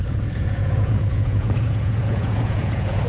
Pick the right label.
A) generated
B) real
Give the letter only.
A